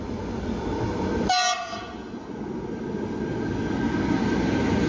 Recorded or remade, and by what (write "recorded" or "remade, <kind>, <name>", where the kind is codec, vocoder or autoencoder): recorded